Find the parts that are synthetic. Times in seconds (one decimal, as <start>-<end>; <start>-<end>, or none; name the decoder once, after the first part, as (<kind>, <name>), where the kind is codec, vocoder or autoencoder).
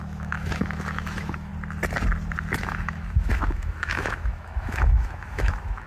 0.0-1.5 (autoencoder, DAC-VAE); 2.6-5.9